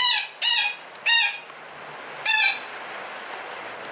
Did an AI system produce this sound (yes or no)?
no